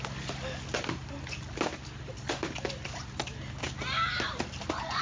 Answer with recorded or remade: recorded